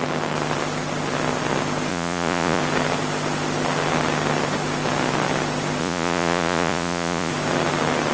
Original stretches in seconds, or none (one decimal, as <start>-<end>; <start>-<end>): 0.0-1.9; 2.6-5.8; 7.3-8.1